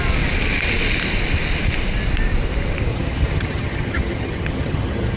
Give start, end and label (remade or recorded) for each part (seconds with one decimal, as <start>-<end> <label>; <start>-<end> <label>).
0.0-2.9 recorded; 2.9-5.2 remade